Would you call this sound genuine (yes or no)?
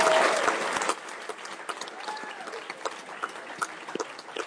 yes